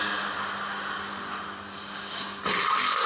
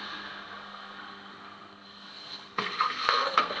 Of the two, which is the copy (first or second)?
second